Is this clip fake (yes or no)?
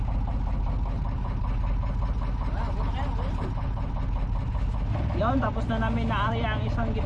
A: no